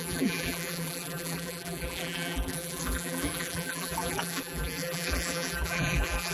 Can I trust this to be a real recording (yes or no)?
no